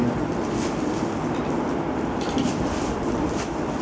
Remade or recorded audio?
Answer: remade